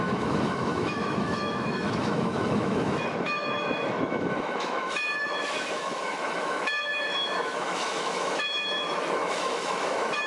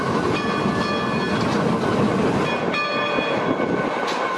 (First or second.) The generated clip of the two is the first